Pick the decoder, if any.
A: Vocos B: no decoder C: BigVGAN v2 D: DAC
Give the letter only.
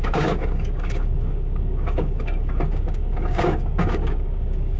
D